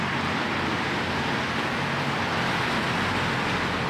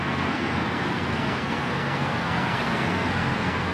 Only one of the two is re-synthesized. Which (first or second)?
second